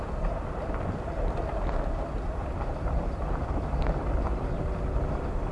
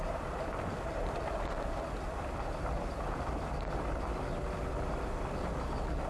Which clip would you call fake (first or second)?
first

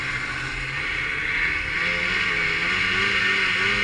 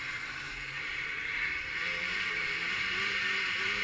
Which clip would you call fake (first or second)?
second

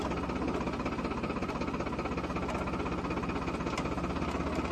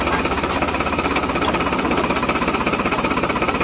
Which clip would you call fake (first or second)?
second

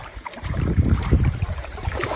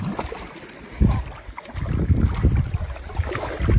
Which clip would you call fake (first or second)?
first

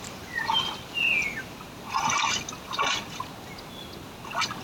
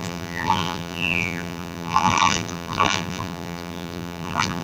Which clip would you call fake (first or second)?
second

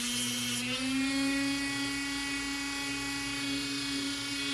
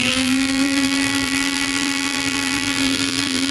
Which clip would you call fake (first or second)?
second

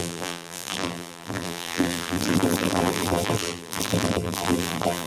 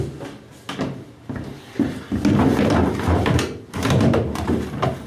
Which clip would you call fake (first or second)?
first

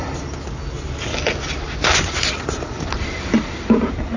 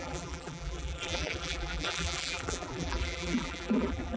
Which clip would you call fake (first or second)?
second